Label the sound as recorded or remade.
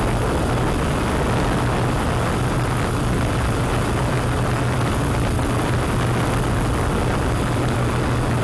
recorded